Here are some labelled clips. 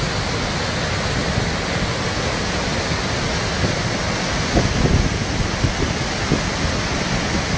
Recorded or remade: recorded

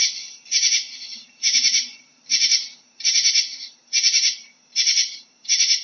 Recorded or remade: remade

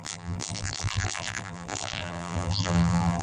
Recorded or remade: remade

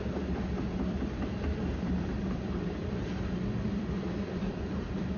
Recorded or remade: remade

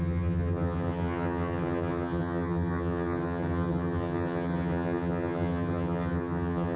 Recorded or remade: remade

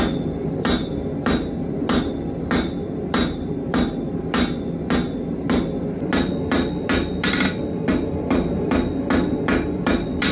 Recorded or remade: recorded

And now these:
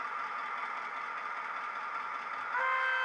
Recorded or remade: recorded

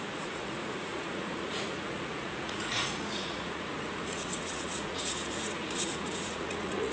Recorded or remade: remade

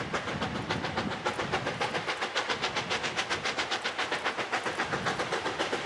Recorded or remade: recorded